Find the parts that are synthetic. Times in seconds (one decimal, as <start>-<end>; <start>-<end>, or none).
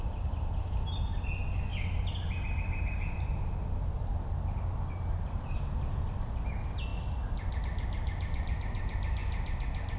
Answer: none